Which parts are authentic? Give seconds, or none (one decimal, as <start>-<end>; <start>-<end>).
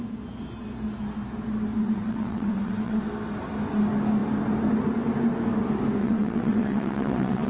0.0-1.8; 3.0-6.0